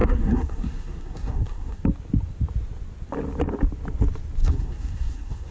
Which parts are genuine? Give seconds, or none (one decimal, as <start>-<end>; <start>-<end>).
1.8-4.4